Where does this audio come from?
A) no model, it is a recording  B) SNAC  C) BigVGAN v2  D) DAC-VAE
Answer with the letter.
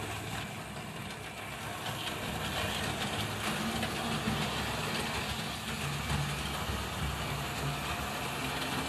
A